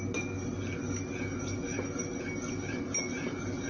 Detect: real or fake real